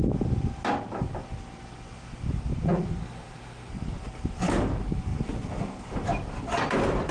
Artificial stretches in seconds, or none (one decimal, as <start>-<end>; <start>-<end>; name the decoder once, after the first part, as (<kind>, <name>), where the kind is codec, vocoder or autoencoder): 3.0-3.7 (autoencoder, DAC-VAE)